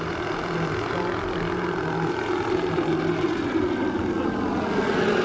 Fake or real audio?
real